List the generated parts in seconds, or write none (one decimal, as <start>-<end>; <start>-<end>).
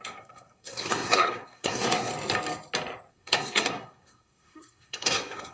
0.0-2.1; 3.1-5.5